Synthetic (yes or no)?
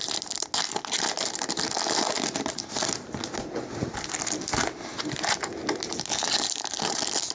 no